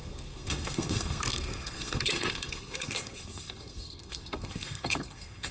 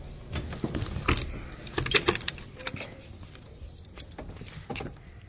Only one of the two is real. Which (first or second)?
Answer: second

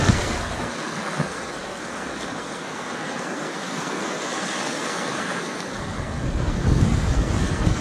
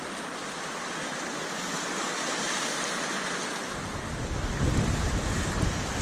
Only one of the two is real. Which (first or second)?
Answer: second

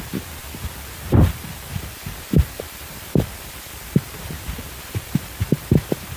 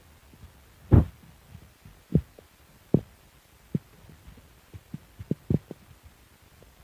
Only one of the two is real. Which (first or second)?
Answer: second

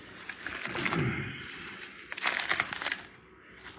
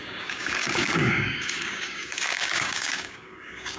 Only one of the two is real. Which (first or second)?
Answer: first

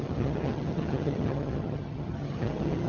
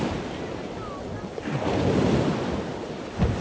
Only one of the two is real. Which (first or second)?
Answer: second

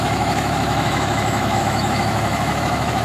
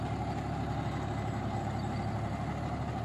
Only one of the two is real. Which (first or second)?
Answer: second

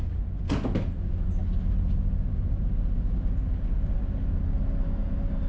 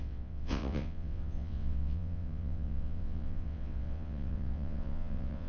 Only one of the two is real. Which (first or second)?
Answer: first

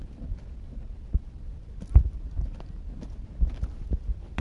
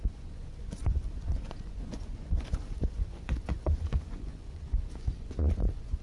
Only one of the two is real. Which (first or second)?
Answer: first